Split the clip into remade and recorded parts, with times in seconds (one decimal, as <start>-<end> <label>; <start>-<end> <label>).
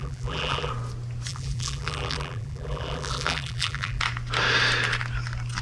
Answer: 0.0-0.7 remade; 0.7-1.3 recorded; 1.3-4.0 remade; 4.0-5.6 recorded